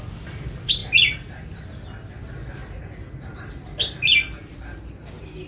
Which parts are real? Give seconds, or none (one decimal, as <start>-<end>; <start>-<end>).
0.0-5.5